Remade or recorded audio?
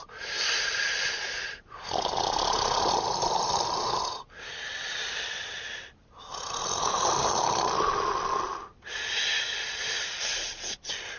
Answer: recorded